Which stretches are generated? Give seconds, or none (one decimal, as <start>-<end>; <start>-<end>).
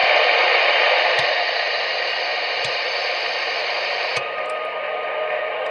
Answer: 0.0-1.4; 2.3-5.7